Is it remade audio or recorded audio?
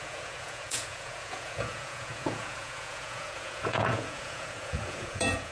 remade